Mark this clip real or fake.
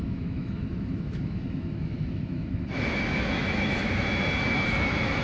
fake